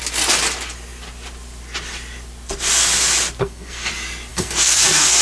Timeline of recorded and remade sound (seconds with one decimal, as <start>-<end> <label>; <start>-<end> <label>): 0.0-3.4 recorded; 3.4-3.9 remade; 3.9-4.3 recorded; 4.3-5.2 remade